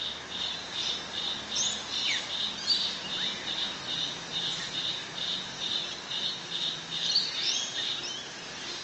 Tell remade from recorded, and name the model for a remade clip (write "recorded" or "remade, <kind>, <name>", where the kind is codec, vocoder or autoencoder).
recorded